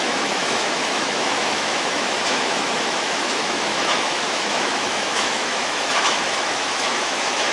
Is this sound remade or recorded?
remade